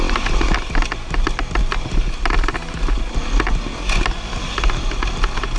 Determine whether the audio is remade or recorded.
recorded